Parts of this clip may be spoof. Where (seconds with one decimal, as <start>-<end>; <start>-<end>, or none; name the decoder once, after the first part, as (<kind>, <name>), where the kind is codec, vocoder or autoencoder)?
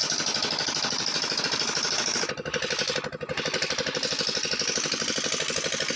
none